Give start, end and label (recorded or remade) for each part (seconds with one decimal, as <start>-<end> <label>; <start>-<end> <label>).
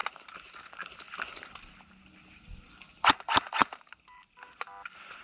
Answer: 0.0-5.2 recorded